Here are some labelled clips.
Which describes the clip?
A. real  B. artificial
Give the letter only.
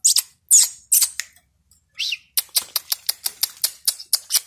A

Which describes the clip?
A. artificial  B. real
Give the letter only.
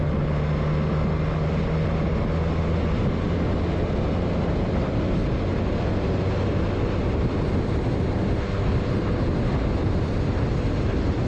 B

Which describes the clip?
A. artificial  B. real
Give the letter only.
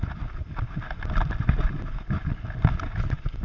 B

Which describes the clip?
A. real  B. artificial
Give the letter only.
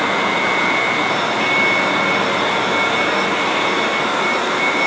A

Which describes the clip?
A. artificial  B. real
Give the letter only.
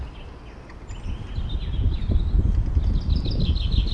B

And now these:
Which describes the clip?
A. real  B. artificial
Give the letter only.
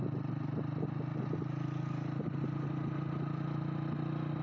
A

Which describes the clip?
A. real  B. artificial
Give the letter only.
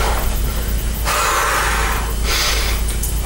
A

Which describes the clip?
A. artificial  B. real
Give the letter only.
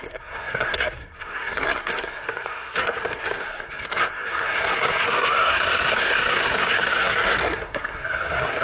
A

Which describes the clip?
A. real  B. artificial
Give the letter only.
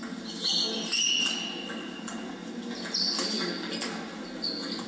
A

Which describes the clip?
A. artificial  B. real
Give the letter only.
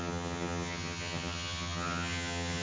A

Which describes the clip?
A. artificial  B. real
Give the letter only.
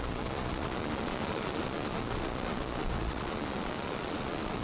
A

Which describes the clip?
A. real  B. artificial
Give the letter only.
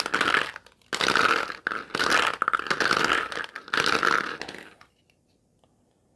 A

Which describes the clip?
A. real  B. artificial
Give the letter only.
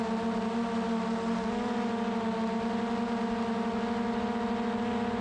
A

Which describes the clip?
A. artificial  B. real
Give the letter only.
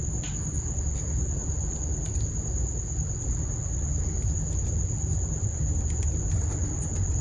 B